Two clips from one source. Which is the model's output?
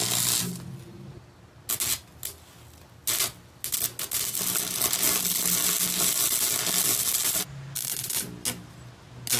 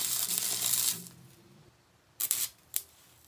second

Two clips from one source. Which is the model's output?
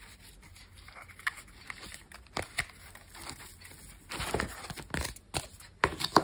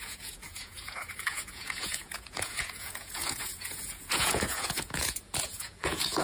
second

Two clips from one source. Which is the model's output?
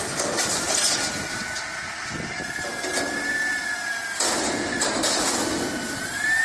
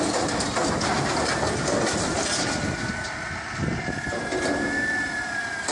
second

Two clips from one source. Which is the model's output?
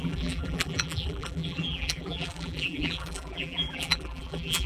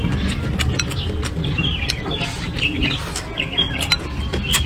first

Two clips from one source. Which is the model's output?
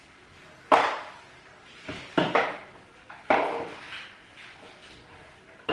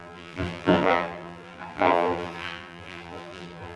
second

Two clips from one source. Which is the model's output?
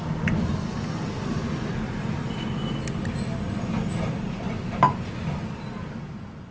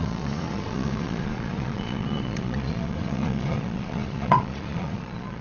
second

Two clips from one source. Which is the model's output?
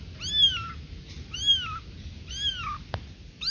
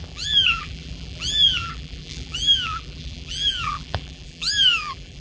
second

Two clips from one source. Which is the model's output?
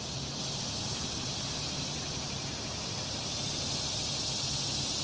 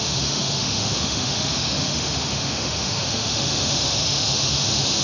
second